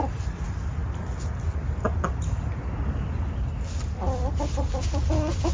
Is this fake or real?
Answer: real